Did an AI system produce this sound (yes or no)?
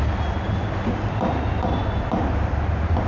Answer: no